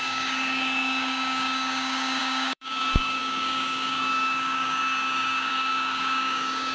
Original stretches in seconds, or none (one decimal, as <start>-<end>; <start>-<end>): none